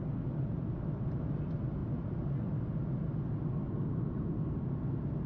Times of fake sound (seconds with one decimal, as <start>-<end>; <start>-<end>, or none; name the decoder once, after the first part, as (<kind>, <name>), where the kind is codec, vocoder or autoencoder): none